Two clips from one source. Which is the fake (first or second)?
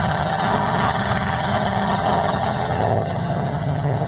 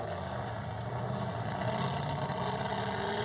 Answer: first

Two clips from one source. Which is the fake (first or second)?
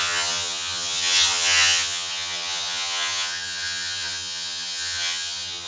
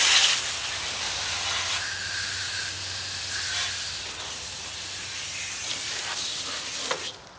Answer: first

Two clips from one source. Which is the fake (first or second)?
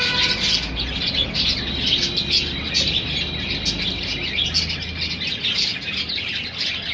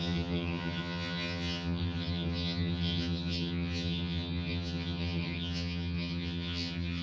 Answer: second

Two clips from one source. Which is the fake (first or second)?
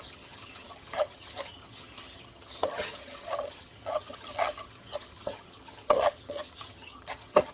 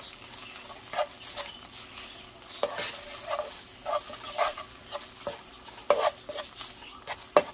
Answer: first